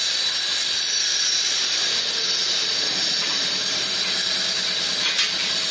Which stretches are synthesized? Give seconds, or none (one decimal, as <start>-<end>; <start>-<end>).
0.5-2.2; 3.3-4.0

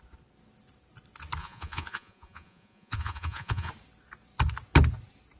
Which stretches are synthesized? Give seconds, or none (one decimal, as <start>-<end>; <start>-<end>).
1.4-3.7